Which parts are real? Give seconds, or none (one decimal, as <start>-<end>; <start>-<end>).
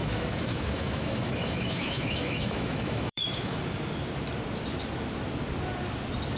3.6-6.4